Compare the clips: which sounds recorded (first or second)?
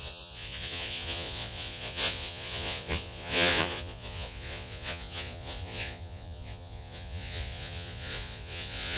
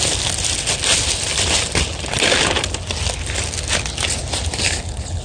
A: second